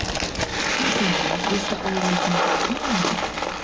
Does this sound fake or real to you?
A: real